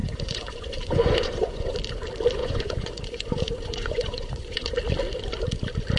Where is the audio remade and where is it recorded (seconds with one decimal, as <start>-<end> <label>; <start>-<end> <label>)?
0.0-1.8 remade; 1.8-2.4 recorded; 2.4-4.7 remade; 4.7-6.0 recorded